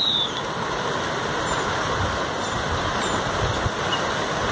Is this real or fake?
real